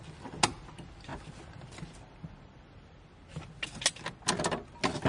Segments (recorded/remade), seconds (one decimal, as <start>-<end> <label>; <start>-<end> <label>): 0.0-5.1 recorded